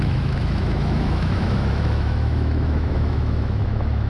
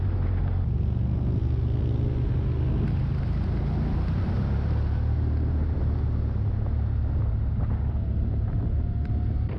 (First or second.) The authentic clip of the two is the second